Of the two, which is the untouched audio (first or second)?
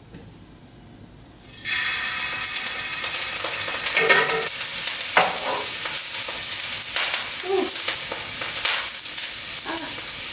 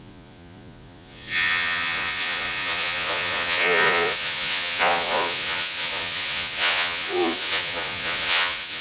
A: first